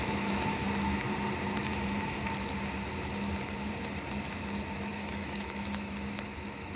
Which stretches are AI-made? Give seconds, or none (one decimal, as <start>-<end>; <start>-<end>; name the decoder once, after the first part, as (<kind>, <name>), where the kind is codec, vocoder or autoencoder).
0.0-0.6 (autoencoder, DAC-VAE); 4.7-6.8